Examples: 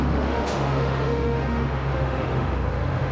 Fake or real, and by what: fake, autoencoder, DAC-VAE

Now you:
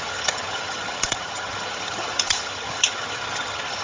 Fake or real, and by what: fake, vocoder, HiFi-GAN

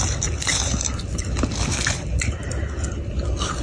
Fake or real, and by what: real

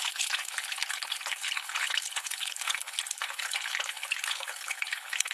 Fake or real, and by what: fake, codec, HILCodec